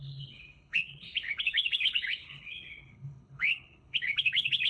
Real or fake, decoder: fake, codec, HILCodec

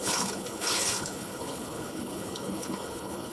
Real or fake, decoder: fake, codec, HILCodec